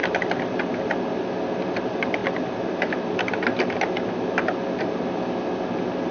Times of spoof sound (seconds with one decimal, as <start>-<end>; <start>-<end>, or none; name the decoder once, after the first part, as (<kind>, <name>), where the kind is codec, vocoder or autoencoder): none